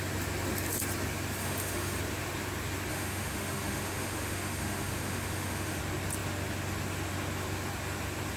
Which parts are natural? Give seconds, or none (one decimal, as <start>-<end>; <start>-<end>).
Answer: 0.0-1.4; 2.0-2.9; 5.8-8.4